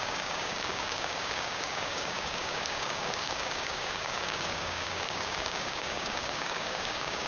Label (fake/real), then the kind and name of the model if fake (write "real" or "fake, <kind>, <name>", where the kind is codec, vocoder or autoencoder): fake, codec, DAC